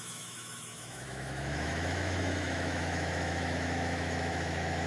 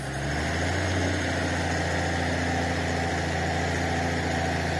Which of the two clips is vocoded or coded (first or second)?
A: first